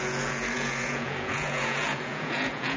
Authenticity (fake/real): fake